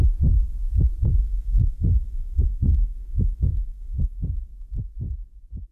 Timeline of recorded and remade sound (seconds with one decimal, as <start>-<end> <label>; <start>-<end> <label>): 0.0-1.0 recorded; 1.0-4.4 remade; 4.4-5.7 recorded